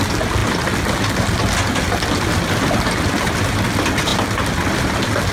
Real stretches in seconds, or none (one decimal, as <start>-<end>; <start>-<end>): 0.0-5.3